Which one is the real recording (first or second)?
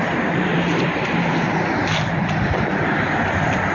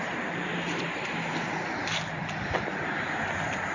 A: second